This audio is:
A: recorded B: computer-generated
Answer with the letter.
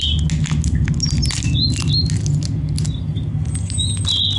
A